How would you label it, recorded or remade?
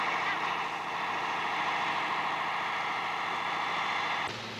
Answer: recorded